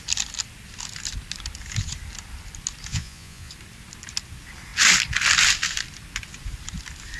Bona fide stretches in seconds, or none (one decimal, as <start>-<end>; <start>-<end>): 0.0-2.9; 3.5-7.2